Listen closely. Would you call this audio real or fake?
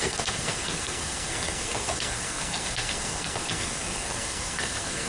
fake